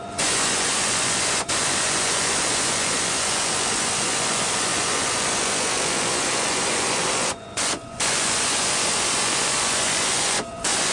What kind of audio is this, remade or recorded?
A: remade